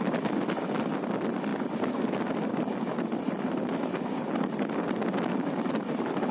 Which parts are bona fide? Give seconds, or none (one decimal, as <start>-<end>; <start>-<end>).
0.0-6.3